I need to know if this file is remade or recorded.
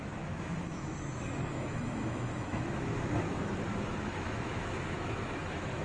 remade